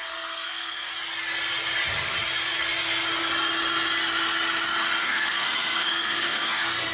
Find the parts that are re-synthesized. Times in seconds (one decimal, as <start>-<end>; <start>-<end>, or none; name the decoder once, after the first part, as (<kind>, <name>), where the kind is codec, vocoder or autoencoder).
0.0-0.9 (codec, SNAC); 5.0-6.9